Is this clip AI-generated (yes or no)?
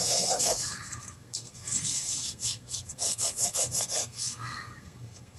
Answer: yes